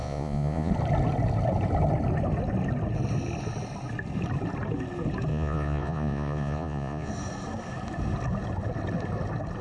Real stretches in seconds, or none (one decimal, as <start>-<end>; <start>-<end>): 0.7-5.3; 7.1-9.6